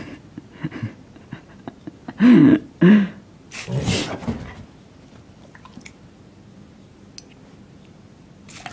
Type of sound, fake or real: real